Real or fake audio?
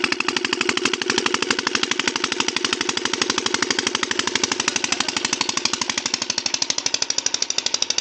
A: real